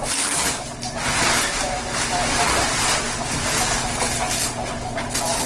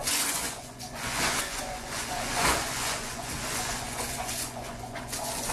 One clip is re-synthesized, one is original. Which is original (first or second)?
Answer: first